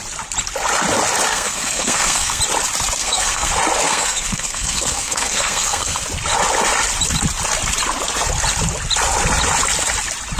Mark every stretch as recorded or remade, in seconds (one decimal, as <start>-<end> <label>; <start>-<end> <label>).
0.0-1.3 recorded; 1.3-2.4 remade; 2.4-3.0 recorded; 3.0-3.5 remade; 3.5-3.9 recorded; 3.9-6.0 remade; 6.0-10.4 recorded